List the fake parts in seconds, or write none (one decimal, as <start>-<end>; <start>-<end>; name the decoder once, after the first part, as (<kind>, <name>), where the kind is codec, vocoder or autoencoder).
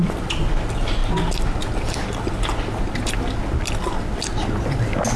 none